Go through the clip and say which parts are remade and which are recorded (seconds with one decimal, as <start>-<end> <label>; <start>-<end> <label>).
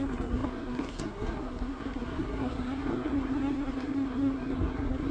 0.0-5.1 remade